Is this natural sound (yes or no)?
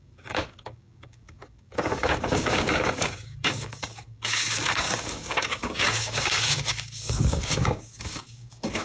no